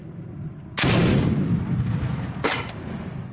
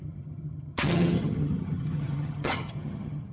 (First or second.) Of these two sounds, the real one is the first